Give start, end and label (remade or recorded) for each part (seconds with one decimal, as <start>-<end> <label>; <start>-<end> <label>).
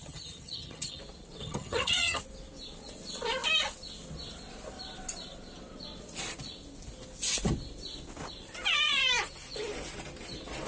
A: 0.0-1.0 remade; 1.0-1.4 recorded; 1.4-2.2 remade; 2.2-10.7 recorded